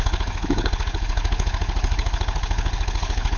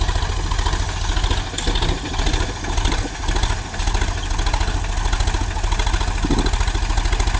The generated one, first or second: first